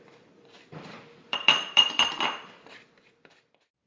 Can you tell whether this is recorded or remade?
remade